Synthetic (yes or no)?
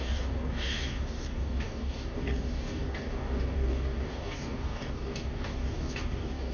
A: yes